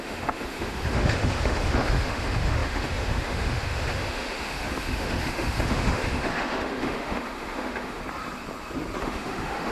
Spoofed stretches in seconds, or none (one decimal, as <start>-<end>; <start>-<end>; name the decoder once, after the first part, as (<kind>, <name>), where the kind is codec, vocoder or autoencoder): 0.0-8.0 (autoencoder, DAC-VAE); 9.0-9.7